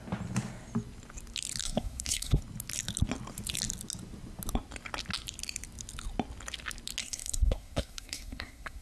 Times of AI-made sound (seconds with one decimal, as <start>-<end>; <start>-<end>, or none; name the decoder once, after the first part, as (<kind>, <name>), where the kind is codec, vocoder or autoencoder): 1.6-2.4 (codec, SNAC); 7.0-8.8